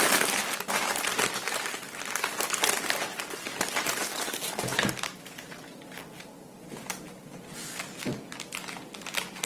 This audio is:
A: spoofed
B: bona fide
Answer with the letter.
B